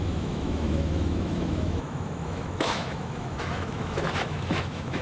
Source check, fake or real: fake